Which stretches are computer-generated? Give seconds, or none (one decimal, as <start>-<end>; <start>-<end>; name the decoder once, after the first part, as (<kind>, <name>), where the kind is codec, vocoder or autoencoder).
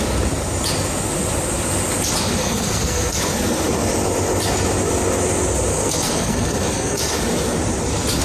2.4-3.2 (codec, SNAC); 5.7-7.2